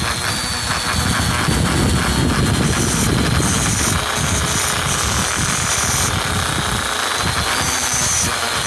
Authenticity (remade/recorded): recorded